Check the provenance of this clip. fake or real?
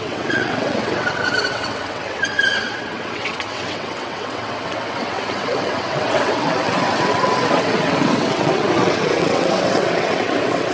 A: fake